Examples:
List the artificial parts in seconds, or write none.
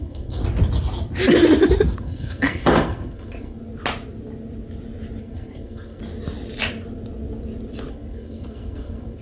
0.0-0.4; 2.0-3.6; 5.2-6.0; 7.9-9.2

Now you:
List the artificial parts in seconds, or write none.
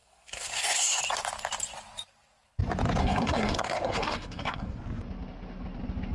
0.0-1.0; 3.0-4.8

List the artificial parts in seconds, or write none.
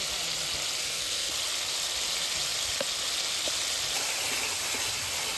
0.8-1.3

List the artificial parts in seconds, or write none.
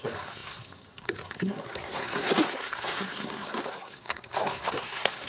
0.0-5.3